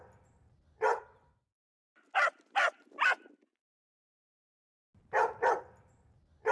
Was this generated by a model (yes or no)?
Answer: no